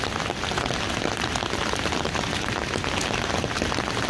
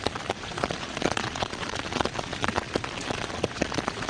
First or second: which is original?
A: first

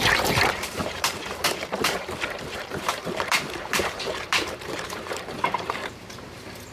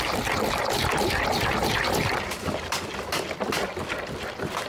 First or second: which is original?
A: second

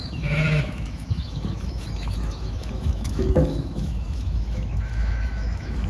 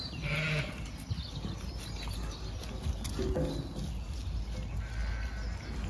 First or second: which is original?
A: second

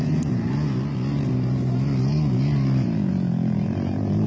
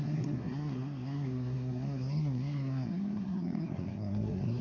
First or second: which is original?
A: first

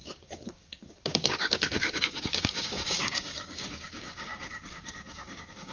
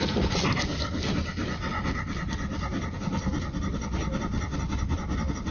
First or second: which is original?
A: second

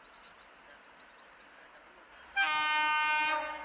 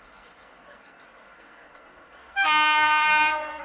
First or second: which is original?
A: first